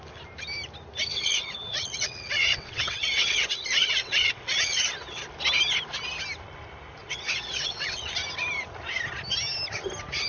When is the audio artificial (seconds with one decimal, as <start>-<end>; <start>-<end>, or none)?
1.1-5.2; 7.0-8.1